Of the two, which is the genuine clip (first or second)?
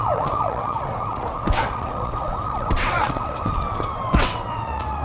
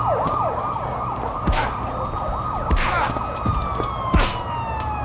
second